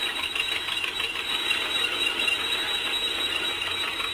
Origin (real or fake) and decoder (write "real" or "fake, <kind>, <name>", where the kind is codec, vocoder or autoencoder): real